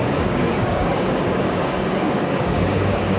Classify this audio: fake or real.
fake